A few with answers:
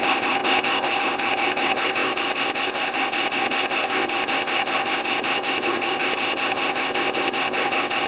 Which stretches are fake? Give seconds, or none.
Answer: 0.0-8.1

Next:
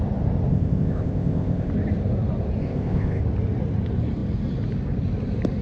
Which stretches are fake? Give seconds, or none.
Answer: 0.5-1.7; 2.6-3.2